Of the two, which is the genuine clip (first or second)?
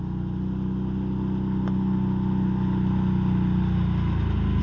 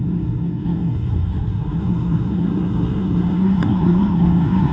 first